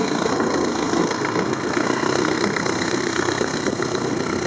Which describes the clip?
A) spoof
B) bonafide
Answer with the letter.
A